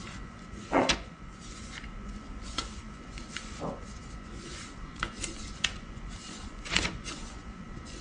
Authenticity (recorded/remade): remade